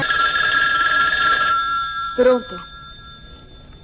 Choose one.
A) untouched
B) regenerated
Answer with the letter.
A